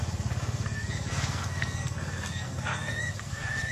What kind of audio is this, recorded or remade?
remade